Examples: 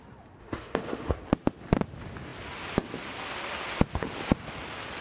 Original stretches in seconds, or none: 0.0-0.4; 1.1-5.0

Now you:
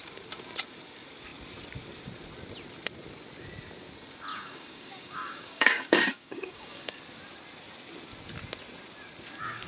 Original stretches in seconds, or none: 0.0-4.3; 7.0-9.7